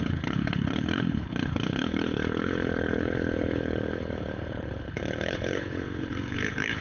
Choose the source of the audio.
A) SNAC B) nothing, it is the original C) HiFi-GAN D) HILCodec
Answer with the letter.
D